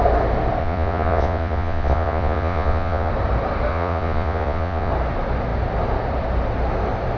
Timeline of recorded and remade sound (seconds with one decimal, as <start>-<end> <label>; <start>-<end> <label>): 0.0-0.6 recorded; 0.6-3.1 remade; 3.1-3.7 recorded; 3.7-4.9 remade; 4.9-7.2 recorded